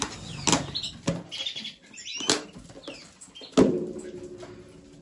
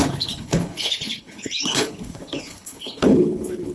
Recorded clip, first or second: first